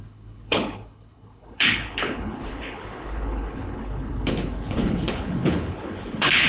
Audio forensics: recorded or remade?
remade